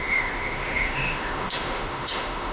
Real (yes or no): no